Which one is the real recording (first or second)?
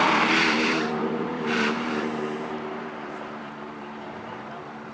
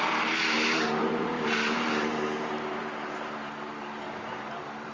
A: second